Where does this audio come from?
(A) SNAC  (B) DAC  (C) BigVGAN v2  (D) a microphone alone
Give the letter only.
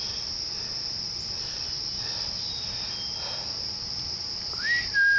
D